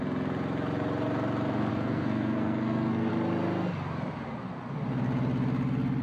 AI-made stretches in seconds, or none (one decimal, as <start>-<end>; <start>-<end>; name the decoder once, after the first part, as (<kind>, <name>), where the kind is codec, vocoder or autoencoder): 1.7-3.1 (codec, SNAC)